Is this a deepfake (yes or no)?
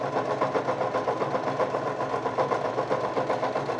no